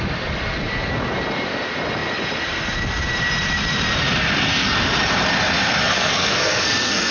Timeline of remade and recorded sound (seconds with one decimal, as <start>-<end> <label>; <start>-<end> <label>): 0.0-5.9 recorded; 5.9-7.1 remade